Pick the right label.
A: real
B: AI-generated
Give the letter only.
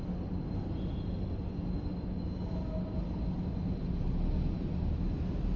A